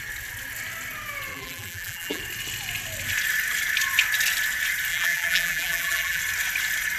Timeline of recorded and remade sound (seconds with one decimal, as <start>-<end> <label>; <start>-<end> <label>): 0.0-1.3 recorded; 1.3-2.2 remade; 2.2-4.9 recorded; 4.9-6.2 remade; 6.2-7.0 recorded